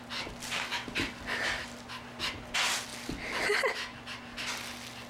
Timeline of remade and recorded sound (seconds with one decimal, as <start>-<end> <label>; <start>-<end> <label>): 0.0-5.1 recorded